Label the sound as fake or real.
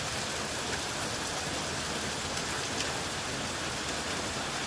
real